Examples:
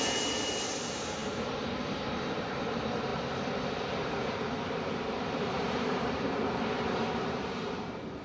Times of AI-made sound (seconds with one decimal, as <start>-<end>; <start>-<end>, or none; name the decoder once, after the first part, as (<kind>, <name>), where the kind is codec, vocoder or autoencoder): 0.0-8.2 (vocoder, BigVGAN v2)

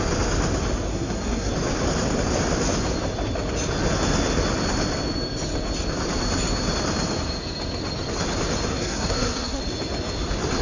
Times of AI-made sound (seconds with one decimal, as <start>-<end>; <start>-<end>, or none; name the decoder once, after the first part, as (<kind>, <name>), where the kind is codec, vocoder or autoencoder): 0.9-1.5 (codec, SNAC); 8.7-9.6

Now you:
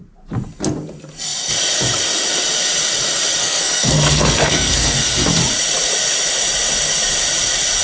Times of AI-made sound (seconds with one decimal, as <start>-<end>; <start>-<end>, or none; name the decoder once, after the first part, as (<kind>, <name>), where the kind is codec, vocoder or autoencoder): 3.4-5.0 (codec, SNAC)

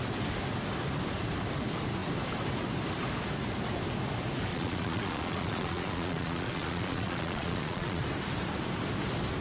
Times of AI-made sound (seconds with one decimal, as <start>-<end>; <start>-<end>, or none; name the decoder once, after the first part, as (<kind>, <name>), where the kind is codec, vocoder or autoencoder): 4.5-8.0 (vocoder, Vocos)

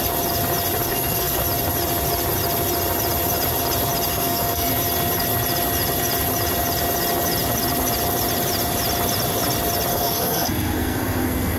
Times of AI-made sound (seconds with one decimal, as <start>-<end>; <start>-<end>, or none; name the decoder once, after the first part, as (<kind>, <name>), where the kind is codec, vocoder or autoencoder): 0.9-1.4 (codec, SNAC); 4.1-4.7; 9.9-11.6

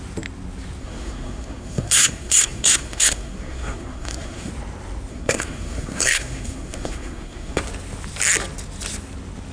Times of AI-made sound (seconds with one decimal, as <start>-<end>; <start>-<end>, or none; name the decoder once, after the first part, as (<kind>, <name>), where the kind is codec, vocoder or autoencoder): 0.8-4.5 (codec, SNAC); 5.1-7.6

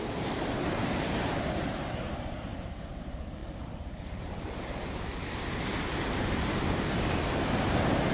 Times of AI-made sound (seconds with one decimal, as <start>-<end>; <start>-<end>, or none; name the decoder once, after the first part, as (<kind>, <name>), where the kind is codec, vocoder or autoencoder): none

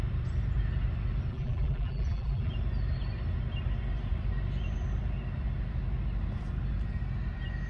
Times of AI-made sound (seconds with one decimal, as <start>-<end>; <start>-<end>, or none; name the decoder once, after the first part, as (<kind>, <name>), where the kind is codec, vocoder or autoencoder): 1.3-2.5 (vocoder, BigVGAN v2)